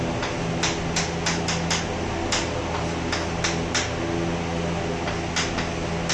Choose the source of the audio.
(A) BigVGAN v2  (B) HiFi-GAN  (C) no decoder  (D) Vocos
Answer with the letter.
C